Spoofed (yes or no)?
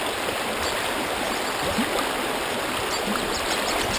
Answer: no